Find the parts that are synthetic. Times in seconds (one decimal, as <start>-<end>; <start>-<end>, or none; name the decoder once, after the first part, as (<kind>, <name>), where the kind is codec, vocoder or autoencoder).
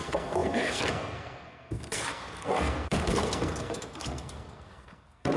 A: 0.0-5.4 (codec, SNAC)